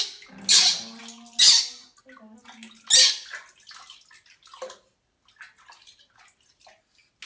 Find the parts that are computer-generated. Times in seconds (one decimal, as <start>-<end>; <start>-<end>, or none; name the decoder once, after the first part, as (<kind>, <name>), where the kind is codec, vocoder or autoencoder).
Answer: none